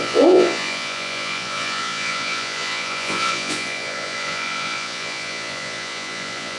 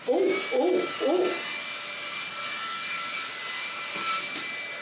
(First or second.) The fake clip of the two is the first